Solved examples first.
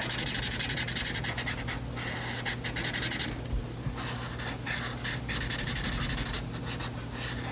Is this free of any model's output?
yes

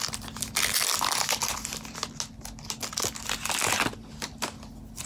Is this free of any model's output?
yes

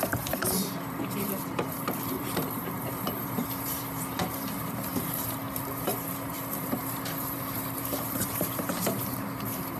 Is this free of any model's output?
no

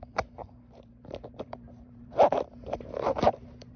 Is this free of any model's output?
no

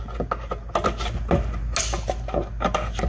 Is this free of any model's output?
yes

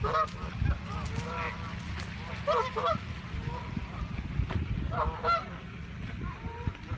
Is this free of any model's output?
yes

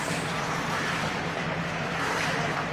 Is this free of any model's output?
yes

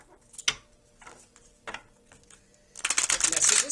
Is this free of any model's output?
yes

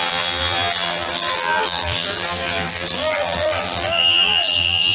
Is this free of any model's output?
no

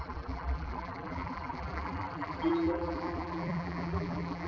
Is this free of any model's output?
no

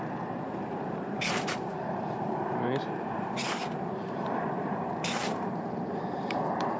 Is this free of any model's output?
no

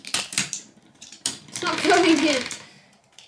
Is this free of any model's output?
no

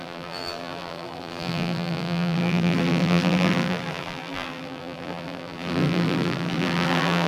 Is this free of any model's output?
no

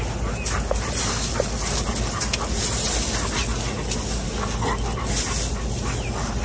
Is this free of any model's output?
yes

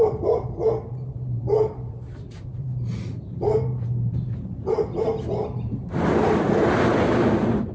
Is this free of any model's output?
no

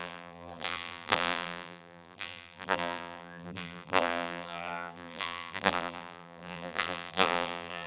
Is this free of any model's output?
no